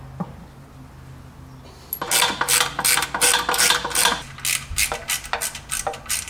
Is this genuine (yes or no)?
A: yes